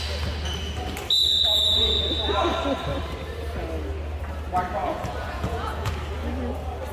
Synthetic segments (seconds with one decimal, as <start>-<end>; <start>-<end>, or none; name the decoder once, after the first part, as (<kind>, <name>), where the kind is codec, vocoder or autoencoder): 1.3-2.0 (vocoder, Vocos); 4.8-5.9